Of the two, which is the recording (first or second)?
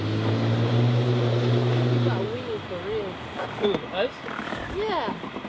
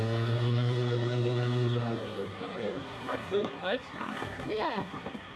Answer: first